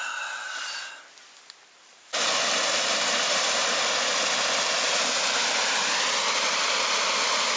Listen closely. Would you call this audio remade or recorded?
recorded